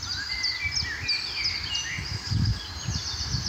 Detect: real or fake real